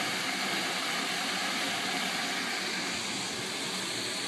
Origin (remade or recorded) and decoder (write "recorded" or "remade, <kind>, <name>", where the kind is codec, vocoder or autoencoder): recorded